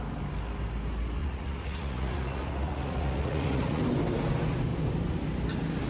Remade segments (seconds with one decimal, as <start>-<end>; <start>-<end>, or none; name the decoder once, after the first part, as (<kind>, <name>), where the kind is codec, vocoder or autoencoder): 1.2-3.8 (vocoder, Vocos)